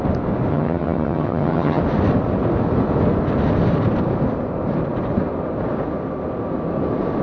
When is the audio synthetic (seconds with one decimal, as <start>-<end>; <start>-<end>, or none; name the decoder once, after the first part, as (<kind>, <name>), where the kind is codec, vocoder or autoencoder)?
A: 0.5-1.8 (vocoder, HiFi-GAN)